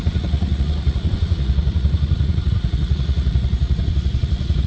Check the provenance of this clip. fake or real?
fake